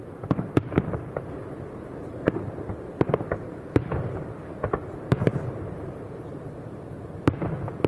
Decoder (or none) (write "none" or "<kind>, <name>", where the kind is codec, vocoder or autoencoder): vocoder, BigVGAN v2